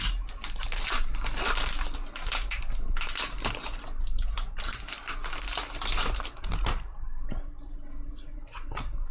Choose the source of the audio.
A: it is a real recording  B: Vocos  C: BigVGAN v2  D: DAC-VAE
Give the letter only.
C